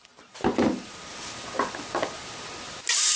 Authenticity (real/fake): real